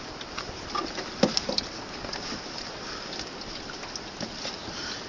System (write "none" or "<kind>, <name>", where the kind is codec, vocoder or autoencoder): none